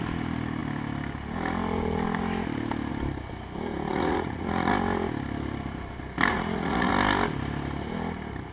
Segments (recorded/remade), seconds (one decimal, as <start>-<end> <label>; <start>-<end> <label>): 0.0-3.9 recorded; 3.9-4.7 remade; 4.7-6.3 recorded; 6.3-6.9 remade; 6.9-8.5 recorded